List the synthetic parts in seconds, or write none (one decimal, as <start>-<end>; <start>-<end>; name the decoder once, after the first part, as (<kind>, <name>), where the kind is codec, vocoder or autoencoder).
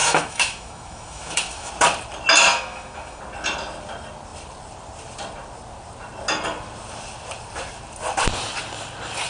0.0-1.7 (autoencoder, DAC-VAE); 2.5-3.2